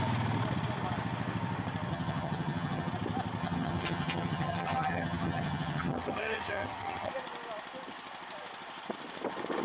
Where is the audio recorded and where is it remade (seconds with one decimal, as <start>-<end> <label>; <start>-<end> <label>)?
0.0-1.9 recorded; 1.9-2.9 remade; 2.9-3.4 recorded; 3.4-7.1 remade; 7.1-9.6 recorded